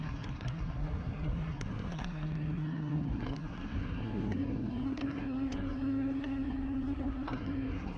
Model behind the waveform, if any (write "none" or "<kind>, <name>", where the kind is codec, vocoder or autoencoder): codec, SNAC